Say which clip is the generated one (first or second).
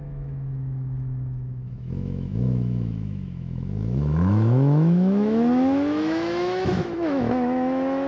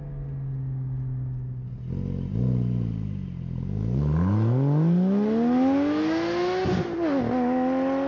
first